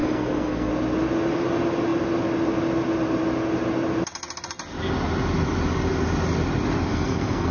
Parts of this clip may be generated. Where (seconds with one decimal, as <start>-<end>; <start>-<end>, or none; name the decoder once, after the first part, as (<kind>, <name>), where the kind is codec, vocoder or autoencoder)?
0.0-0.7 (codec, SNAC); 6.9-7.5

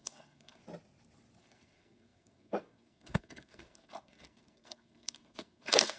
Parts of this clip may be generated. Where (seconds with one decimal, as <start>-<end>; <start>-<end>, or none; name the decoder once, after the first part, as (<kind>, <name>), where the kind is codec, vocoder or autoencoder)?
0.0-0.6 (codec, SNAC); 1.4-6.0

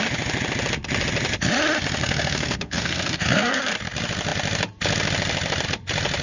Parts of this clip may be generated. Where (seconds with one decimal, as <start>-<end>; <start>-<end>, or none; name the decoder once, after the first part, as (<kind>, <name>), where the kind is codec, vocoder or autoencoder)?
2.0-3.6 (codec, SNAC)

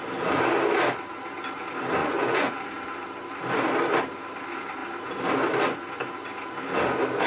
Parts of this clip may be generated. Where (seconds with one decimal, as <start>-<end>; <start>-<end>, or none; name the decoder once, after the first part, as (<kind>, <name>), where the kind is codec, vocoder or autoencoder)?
2.0-2.5 (vocoder, Vocos)